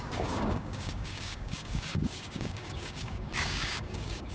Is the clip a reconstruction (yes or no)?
yes